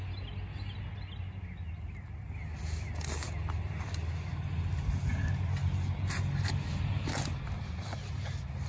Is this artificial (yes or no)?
no